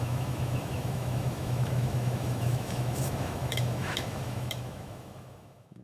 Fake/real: fake